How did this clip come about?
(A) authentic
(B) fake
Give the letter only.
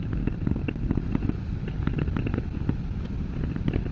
A